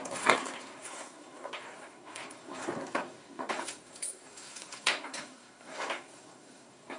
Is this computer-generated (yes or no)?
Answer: yes